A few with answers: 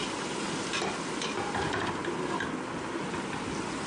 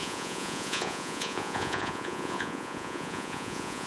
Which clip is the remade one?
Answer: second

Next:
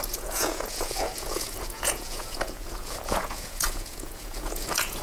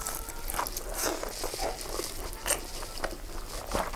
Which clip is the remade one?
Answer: first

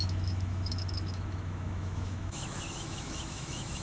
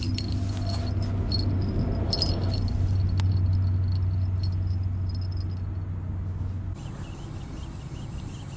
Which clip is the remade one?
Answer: first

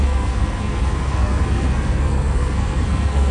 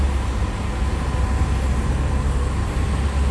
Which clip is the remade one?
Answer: first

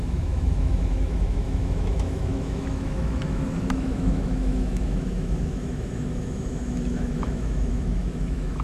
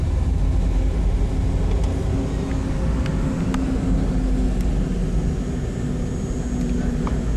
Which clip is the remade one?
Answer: first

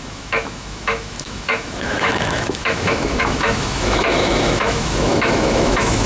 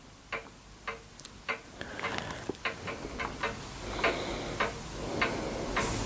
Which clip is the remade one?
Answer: first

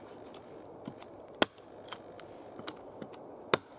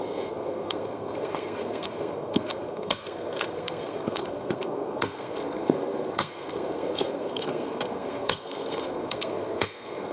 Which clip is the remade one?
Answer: second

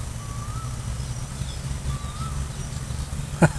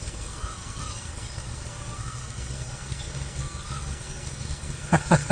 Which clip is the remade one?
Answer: second